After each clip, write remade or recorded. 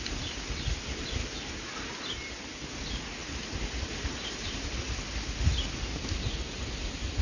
recorded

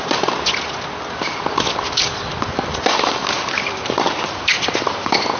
recorded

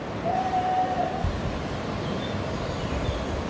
recorded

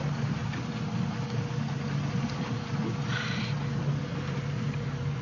recorded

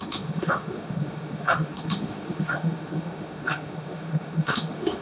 remade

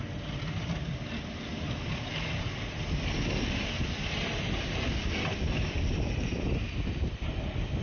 recorded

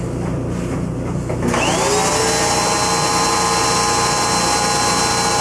recorded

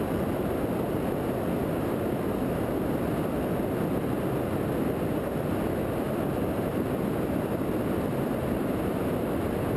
recorded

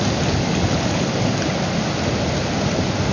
recorded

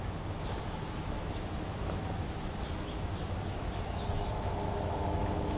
remade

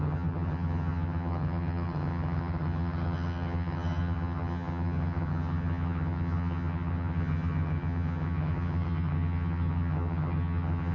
remade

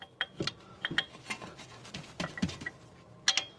recorded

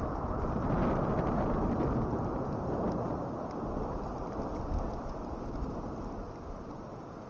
recorded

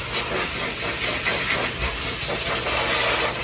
recorded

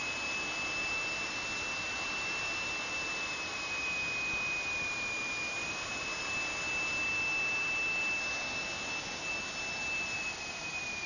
recorded